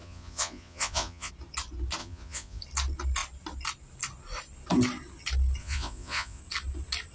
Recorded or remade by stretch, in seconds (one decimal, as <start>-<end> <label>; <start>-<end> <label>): 0.0-1.3 remade; 1.3-2.0 recorded; 2.0-2.6 remade; 2.6-5.6 recorded; 5.6-6.4 remade; 6.4-7.1 recorded